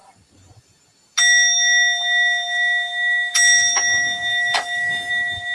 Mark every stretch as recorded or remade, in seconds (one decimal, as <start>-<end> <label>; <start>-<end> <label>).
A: 0.0-4.3 recorded; 4.3-5.1 remade; 5.1-5.5 recorded